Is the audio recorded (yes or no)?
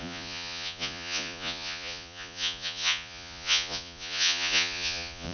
no